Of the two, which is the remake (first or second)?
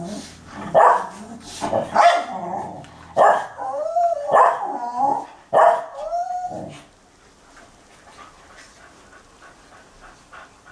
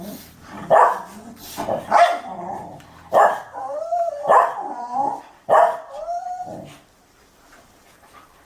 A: second